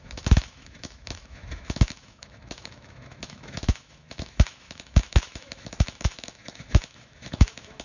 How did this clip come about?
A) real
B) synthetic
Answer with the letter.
B